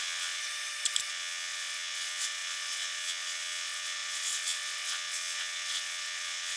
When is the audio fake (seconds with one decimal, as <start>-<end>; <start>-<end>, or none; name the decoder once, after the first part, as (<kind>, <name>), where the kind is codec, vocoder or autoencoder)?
0.0-0.4 (vocoder, WaveNeXt); 1.1-6.6